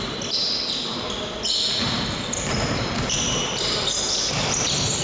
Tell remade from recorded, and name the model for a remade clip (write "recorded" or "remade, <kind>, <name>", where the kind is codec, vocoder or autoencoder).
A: recorded